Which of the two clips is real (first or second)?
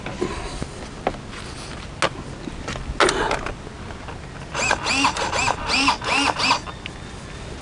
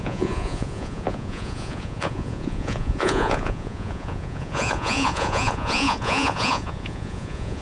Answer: first